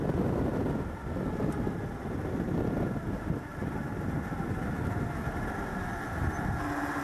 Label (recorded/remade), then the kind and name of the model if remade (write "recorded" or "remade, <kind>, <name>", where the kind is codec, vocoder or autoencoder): recorded